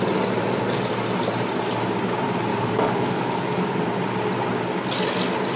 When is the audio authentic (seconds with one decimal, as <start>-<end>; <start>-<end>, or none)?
0.0-2.5; 3.8-5.6